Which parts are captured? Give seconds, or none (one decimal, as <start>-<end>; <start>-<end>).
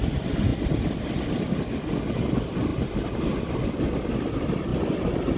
0.0-5.4